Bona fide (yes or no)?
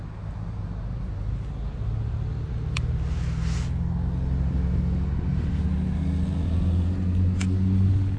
yes